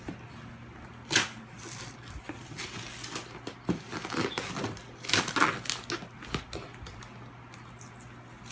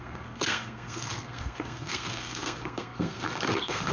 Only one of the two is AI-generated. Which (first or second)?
second